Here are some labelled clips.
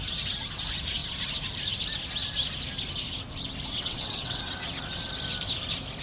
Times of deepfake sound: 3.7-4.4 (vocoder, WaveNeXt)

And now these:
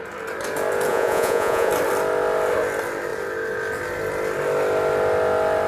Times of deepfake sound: 0.9-1.7 (vocoder, Vocos)

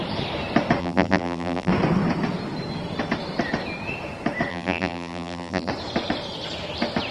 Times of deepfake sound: 0.8-1.7 (vocoder, BigVGAN v2); 4.5-5.7

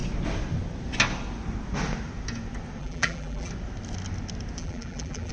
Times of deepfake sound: 2.8-3.5 (vocoder, BigVGAN v2); 4.6-5.3

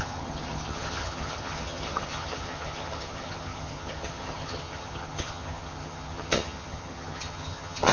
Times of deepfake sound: 0.0-7.9 (vocoder, HiFi-GAN)

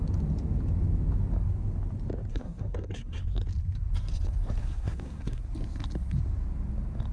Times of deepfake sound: 2.3-3.2 (codec, SNAC); 4.6-5.4

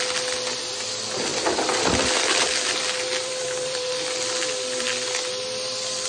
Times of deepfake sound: 1.3-3.9 (vocoder, BigVGAN v2)

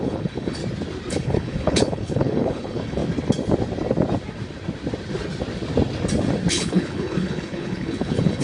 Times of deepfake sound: 0.0-0.6 (codec, HILCodec); 1.1-3.0; 6.5-8.4